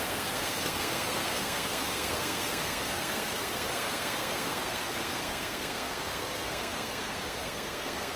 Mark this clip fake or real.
fake